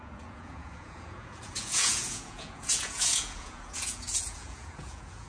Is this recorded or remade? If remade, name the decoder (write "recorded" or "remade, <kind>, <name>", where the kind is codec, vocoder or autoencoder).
remade, vocoder, Vocos